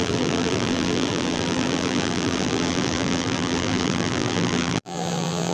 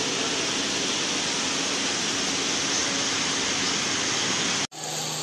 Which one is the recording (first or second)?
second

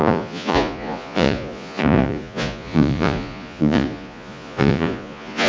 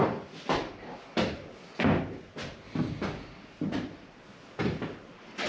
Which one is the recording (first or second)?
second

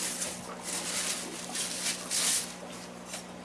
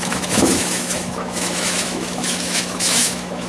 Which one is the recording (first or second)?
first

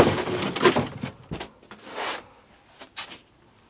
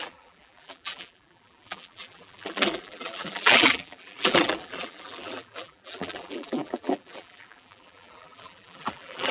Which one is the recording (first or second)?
first